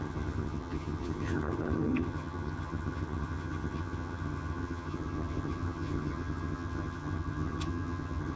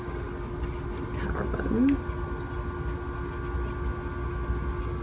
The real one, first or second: second